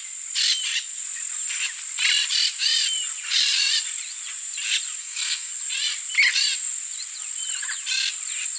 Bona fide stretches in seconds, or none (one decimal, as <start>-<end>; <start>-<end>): 0.0-5.0; 5.5-8.6